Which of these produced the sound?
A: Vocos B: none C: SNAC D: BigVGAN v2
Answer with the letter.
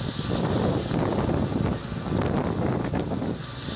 B